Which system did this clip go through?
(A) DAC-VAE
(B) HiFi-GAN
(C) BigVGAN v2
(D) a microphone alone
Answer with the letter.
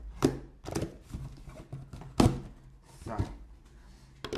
D